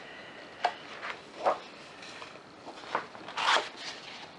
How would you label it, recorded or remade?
recorded